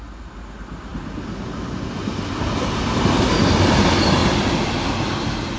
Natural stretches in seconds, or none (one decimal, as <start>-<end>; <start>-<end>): 0.0-5.6